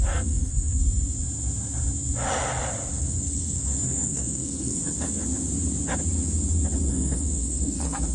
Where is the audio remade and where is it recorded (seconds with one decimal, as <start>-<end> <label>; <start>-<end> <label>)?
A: 0.0-0.8 remade; 0.8-3.0 recorded; 3.0-5.2 remade; 5.2-6.9 recorded; 6.9-8.1 remade